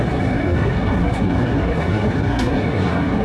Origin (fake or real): fake